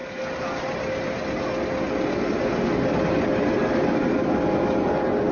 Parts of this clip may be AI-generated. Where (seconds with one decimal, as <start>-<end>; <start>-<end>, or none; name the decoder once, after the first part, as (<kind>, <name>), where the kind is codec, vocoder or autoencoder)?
none